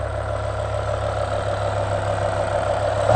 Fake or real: real